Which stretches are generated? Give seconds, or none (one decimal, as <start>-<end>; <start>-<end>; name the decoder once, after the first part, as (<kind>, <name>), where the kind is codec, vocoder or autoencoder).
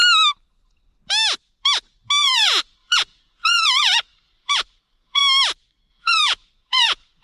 2.2-5.2 (vocoder, Vocos); 5.9-7.2